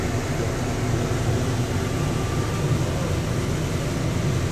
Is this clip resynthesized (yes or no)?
no